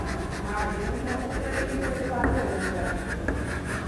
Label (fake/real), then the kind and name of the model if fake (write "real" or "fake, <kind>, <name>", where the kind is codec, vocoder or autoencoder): fake, vocoder, Vocos